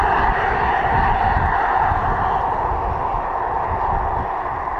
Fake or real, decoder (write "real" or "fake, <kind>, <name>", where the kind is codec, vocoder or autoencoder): real